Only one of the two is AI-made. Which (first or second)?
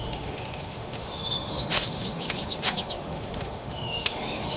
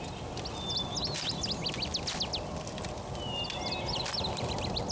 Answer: first